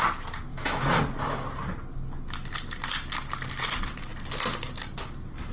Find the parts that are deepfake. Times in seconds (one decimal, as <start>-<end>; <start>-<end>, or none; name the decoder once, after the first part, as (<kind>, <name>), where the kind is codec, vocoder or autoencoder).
0.5-1.0 (autoencoder, DAC-VAE)

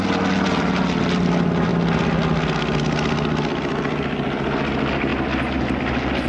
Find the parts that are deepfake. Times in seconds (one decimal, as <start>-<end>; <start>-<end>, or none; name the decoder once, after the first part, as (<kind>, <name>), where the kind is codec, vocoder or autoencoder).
none